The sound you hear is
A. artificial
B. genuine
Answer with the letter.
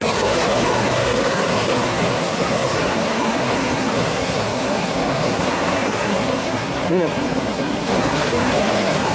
A